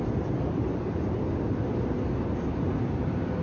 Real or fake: real